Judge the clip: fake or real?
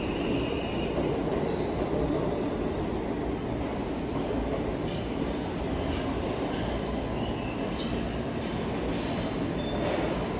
real